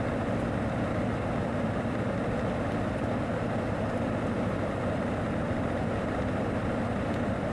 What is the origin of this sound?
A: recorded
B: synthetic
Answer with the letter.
A